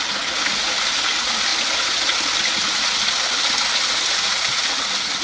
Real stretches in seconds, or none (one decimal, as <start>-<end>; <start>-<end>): 0.0-5.2